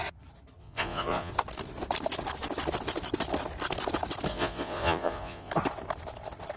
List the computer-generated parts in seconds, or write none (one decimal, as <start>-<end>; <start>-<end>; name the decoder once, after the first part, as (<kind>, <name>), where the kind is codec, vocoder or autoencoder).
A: 0.6-1.3 (vocoder, Vocos); 4.3-5.5